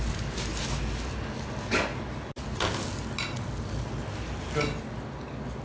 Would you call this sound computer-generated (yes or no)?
no